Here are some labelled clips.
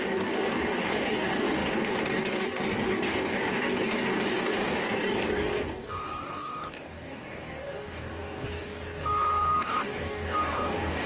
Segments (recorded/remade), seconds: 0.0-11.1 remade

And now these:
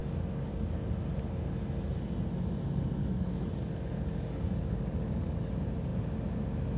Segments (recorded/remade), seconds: 0.0-0.8 remade; 0.8-3.0 recorded; 3.0-5.5 remade; 5.5-6.8 recorded

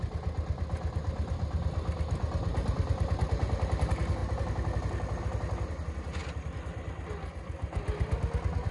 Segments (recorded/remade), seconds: 0.0-8.7 recorded

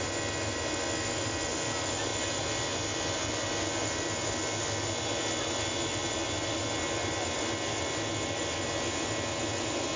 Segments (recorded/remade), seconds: 0.0-10.0 recorded

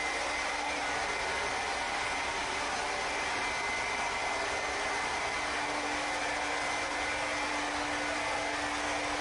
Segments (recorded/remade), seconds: 0.0-9.2 recorded

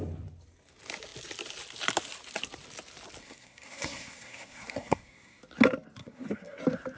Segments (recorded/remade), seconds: 0.0-3.2 recorded; 3.2-5.4 remade; 5.4-6.0 recorded; 6.0-6.6 remade; 6.6-7.0 recorded

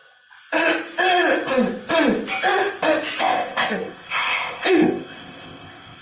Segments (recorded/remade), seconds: 0.0-3.2 recorded; 3.2-6.0 remade

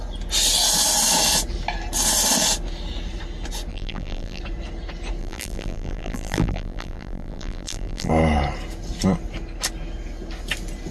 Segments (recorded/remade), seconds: 0.0-3.7 recorded; 3.7-4.4 remade; 4.4-5.2 recorded; 5.2-8.1 remade; 8.1-10.9 recorded